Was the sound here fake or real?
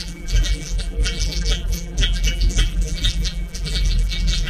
fake